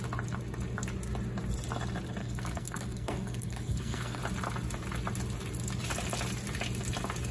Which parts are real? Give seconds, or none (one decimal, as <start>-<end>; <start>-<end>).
0.0-2.2; 4.2-7.3